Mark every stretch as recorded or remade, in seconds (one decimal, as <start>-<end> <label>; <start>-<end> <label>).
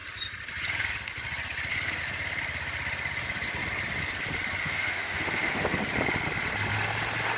0.0-4.6 recorded; 4.6-5.7 remade; 5.7-7.4 recorded